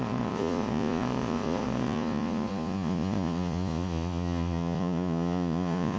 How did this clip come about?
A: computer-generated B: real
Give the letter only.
A